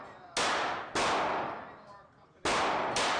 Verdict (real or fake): real